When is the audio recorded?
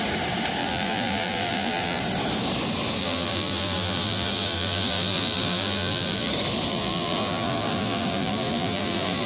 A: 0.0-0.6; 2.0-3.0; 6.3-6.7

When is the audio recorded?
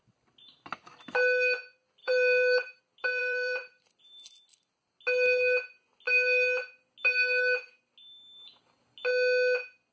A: 0.0-2.0; 2.8-3.2; 4.0-9.9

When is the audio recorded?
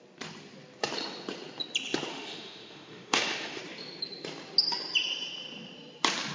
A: 0.0-2.1; 3.6-6.3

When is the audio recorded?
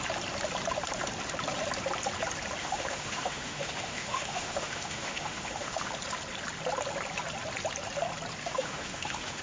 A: 0.0-2.6; 5.9-8.4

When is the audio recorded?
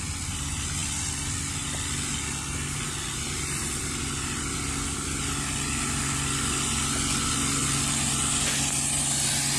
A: 0.0-9.6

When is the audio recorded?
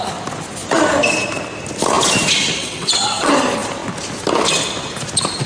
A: 0.0-2.6; 3.3-5.5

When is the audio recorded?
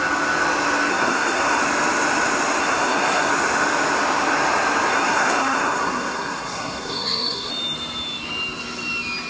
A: 0.0-0.9; 1.6-2.6; 3.3-4.9; 7.5-9.3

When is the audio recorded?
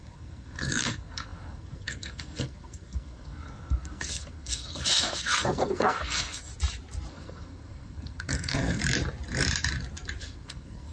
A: 6.5-7.1; 8.8-10.2